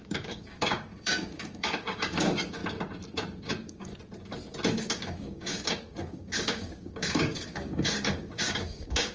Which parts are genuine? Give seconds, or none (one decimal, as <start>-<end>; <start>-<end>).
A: 2.6-3.4; 3.9-4.7